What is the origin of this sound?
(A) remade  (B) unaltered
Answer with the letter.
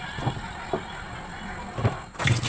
B